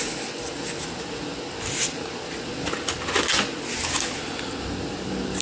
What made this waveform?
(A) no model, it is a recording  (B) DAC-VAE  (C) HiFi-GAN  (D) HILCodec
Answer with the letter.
A